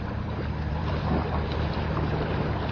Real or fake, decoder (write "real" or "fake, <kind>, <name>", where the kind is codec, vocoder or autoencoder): fake, vocoder, BigVGAN v2